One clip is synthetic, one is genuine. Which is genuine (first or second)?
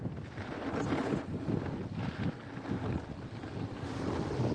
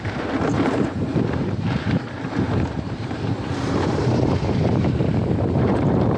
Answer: first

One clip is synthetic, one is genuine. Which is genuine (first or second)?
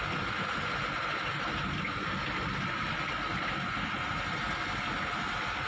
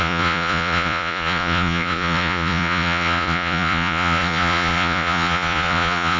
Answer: first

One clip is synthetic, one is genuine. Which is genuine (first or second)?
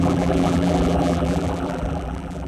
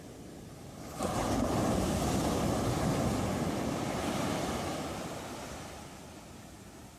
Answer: second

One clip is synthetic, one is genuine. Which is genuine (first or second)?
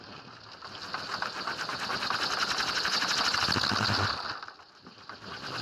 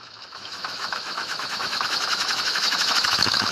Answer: first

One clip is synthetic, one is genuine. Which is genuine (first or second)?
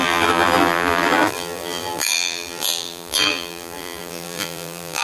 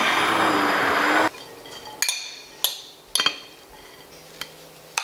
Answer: second